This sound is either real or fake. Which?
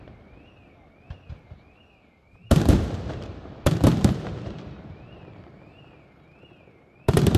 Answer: real